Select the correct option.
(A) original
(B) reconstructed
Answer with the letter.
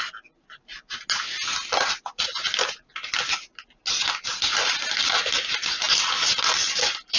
A